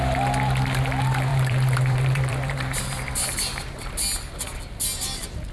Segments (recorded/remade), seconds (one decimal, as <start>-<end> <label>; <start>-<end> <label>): 0.0-1.3 recorded; 1.3-3.9 remade; 3.9-5.5 recorded